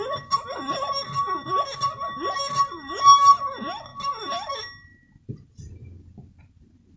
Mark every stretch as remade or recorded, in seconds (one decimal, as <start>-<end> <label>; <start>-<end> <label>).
0.0-7.0 recorded